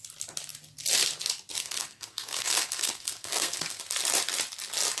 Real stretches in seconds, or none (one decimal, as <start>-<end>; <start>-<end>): 0.0-1.6; 3.8-5.0